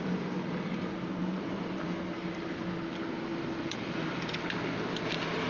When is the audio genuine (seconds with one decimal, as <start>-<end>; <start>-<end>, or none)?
0.0-1.2; 2.0-3.3; 5.0-5.5